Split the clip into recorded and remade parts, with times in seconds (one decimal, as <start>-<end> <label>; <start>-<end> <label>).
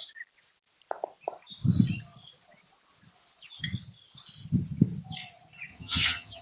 0.0-5.7 recorded; 5.7-6.4 remade